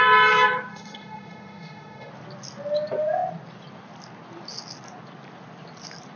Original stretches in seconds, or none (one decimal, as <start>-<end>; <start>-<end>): 0.0-0.7; 2.1-6.2

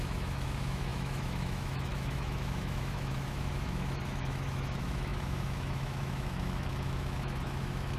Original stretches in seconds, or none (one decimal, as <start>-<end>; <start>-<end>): none

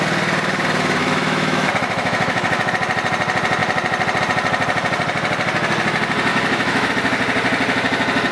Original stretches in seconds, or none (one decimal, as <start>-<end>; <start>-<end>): 0.0-1.0; 2.7-6.3; 6.9-8.3

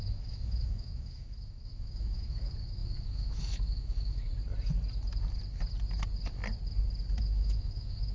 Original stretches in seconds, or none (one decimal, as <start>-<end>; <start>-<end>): 4.3-7.2

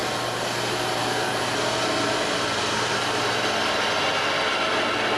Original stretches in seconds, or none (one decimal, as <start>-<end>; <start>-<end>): 0.0-5.2